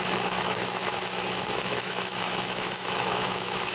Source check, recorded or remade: remade